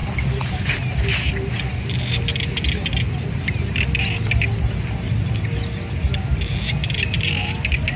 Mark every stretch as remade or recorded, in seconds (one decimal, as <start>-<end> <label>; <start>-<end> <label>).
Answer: 0.0-1.3 recorded; 1.3-2.3 remade; 2.3-6.1 recorded; 6.1-8.0 remade